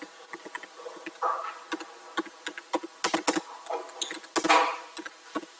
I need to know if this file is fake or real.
real